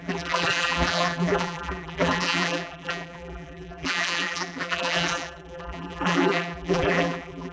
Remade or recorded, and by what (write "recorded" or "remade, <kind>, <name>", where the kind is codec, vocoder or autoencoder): remade, vocoder, BigVGAN v2